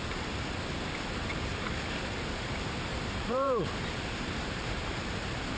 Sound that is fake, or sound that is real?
fake